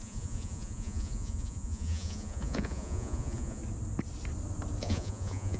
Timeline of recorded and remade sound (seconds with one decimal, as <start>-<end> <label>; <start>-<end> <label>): 0.0-3.6 remade; 3.6-4.8 recorded; 4.8-5.6 remade